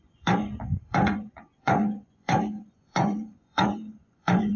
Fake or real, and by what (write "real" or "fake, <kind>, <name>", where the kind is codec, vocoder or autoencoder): fake, vocoder, Vocos